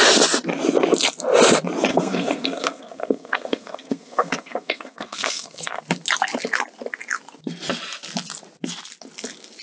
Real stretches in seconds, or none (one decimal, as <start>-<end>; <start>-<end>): 0.0-1.9; 5.8-9.6